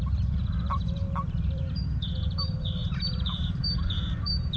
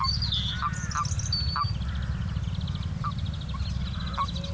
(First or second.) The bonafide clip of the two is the second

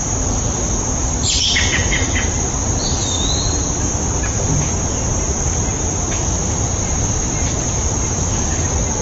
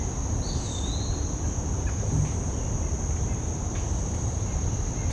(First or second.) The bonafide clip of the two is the second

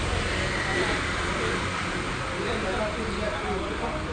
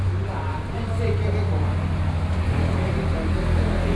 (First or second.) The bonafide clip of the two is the second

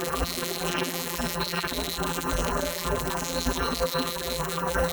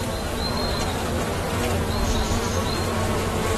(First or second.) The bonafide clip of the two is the second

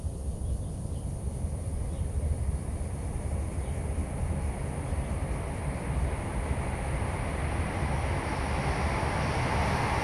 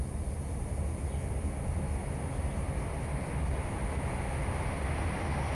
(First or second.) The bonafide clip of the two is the second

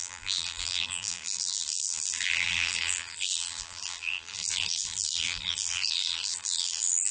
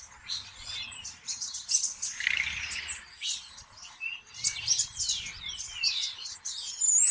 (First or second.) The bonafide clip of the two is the second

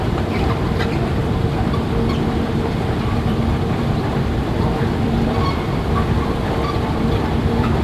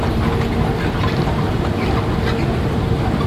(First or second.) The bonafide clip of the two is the second